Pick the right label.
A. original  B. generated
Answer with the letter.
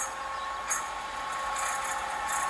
A